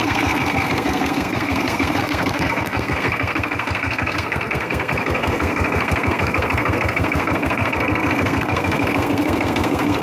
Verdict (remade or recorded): remade